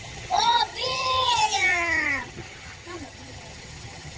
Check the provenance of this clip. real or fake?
fake